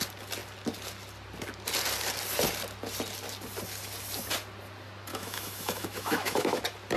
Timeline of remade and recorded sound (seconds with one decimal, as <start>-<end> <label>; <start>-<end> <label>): 0.0-5.1 recorded; 5.1-6.6 remade; 6.6-7.0 recorded